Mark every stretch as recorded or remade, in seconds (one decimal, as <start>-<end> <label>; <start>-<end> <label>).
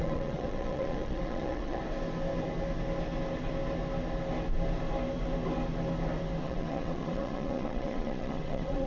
0.0-1.8 remade; 1.8-6.4 recorded; 6.4-8.9 remade